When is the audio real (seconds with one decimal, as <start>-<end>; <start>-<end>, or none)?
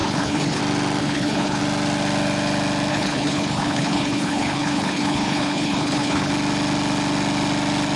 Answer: 0.6-1.0; 1.6-2.9; 6.3-8.0